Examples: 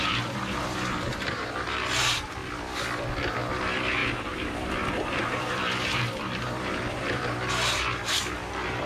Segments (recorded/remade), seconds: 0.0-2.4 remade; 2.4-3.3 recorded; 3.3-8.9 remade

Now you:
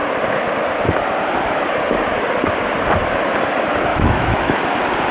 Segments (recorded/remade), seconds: 0.0-3.9 recorded; 3.9-4.6 remade; 4.6-5.1 recorded

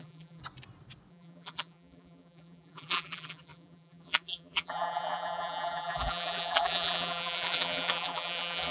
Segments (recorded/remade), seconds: 0.0-0.4 remade; 0.4-1.1 recorded; 1.1-8.7 remade

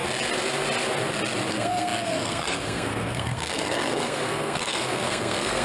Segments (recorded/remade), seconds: 0.0-1.5 recorded; 1.5-5.6 remade

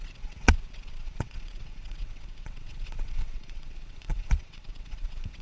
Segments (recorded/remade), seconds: 0.0-5.4 remade

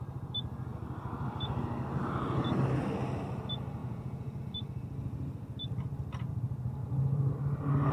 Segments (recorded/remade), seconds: 0.0-3.8 recorded; 3.8-4.4 remade; 4.4-6.8 recorded; 6.8-7.3 remade; 7.3-7.9 recorded

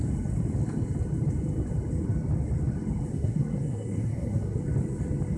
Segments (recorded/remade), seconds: 0.0-3.1 recorded; 3.1-4.6 remade; 4.6-5.4 recorded